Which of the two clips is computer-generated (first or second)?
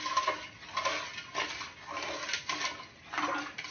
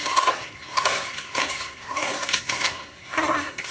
second